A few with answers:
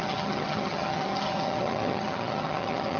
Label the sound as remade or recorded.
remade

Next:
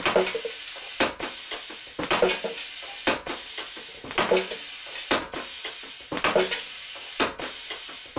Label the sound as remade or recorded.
recorded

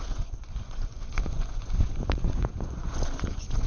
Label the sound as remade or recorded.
remade